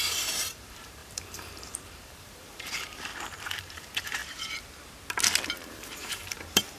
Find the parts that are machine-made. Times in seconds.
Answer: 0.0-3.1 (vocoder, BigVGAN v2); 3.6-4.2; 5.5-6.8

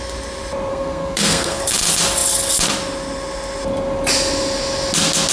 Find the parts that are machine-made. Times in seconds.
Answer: 0.7-1.6 (codec, SNAC)

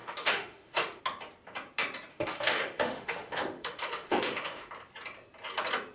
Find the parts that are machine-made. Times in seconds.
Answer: 0.0-1.0 (autoencoder, DAC-VAE); 2.1-4.7

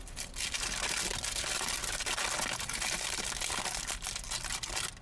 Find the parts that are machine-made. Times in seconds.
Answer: none

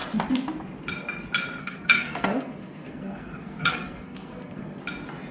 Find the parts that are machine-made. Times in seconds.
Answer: 1.6-4.8 (codec, SNAC)

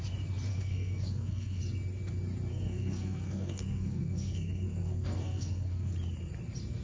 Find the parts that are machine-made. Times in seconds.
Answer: 0.5-1.6 (codec, SNAC); 2.5-5.9